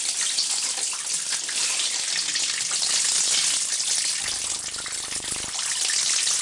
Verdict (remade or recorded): recorded